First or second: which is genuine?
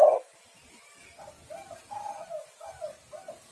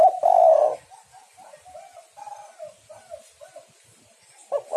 first